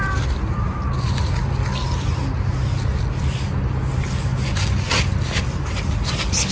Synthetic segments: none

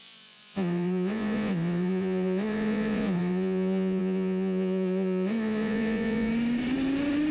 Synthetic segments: 0.0-6.3 (vocoder, Vocos)

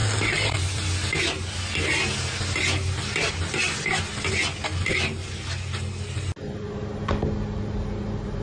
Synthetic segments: none

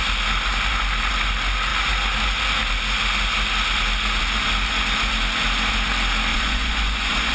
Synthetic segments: 6.3-7.3 (vocoder, Vocos)

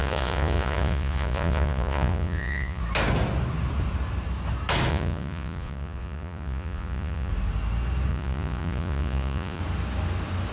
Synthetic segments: 0.0-2.8 (vocoder, Vocos); 4.9-7.3; 8.1-9.6

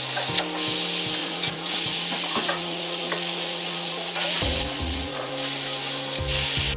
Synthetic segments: 1.2-5.3 (vocoder, Vocos)

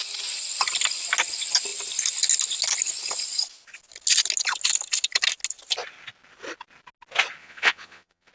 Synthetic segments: 7.4-8.3 (vocoder, Vocos)